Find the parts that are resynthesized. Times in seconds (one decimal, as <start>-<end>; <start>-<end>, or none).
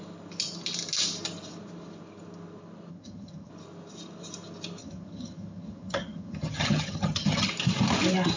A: 2.9-3.5; 4.8-7.5